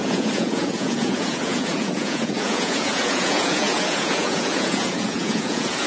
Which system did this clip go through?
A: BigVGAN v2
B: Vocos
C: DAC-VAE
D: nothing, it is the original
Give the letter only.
B